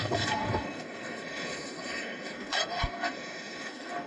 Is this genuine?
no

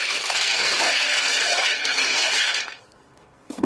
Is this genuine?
no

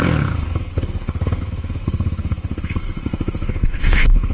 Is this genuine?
no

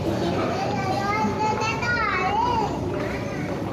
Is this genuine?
yes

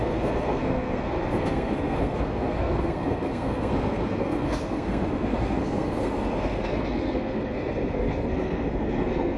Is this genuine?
no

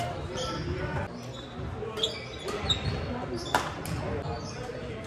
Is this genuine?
yes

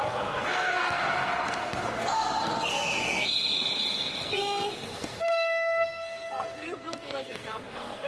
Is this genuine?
no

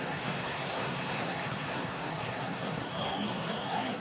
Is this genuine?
no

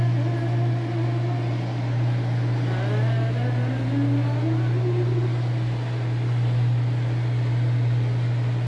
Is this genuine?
yes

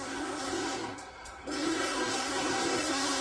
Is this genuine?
no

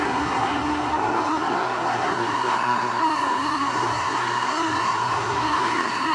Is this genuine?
no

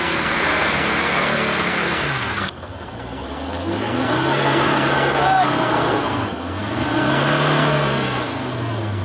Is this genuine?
no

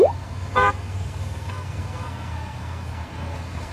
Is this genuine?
no